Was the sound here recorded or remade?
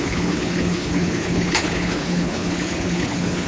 remade